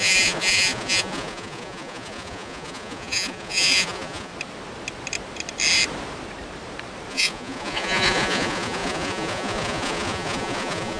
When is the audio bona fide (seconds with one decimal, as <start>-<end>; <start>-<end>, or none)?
4.3-7.1